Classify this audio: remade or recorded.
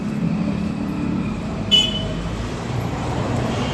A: remade